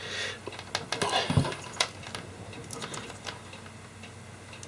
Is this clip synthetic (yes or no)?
no